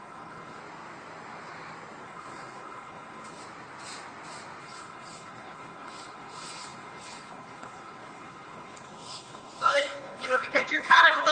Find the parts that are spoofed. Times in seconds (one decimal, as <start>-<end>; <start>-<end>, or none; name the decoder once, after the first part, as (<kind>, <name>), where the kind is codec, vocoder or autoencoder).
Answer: 0.0-0.6 (codec, HILCodec); 2.0-3.4; 4.6-11.3